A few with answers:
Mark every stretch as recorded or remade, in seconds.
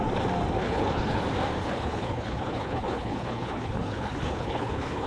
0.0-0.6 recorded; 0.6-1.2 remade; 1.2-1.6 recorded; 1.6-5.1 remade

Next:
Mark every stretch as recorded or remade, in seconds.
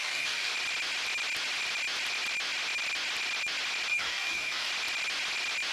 0.0-0.5 remade; 0.5-3.9 recorded; 3.9-4.7 remade; 4.7-5.7 recorded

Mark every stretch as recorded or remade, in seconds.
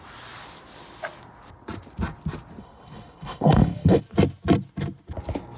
0.0-2.6 recorded; 2.6-4.0 remade; 4.0-5.6 recorded